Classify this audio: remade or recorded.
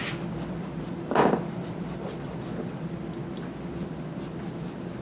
recorded